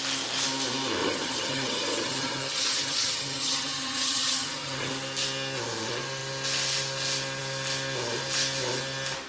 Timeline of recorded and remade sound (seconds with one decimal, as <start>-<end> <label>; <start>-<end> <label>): 0.0-1.0 recorded; 1.0-4.9 remade; 4.9-9.3 recorded